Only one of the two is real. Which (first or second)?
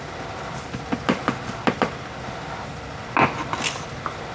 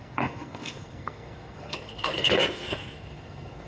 first